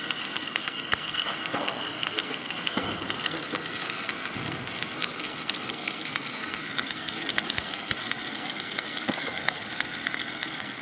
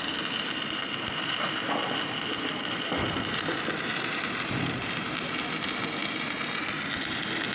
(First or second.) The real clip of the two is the second